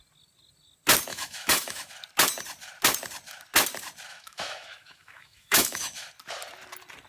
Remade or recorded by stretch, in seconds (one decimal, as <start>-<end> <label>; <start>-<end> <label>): 0.0-1.1 recorded; 1.1-1.9 remade; 1.9-4.1 recorded; 4.1-6.1 remade; 6.1-7.1 recorded